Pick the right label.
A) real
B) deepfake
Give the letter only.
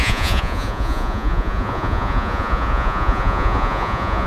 B